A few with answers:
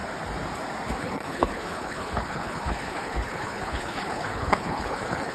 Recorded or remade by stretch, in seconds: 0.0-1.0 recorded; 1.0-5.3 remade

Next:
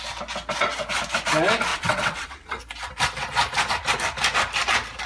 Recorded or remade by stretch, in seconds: 0.0-1.7 recorded; 1.7-2.6 remade; 2.6-5.1 recorded

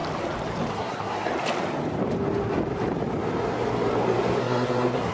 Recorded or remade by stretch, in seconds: 0.0-0.7 recorded; 0.7-1.3 remade; 1.3-4.4 recorded; 4.4-5.1 remade

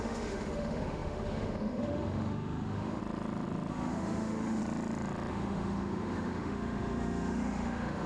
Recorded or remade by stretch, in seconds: 0.0-3.0 remade; 3.0-3.7 recorded; 3.7-4.6 remade; 4.6-5.3 recorded; 5.3-8.1 remade

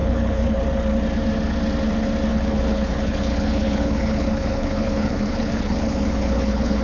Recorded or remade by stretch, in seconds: 0.0-0.6 remade; 0.6-2.3 recorded; 2.3-6.8 remade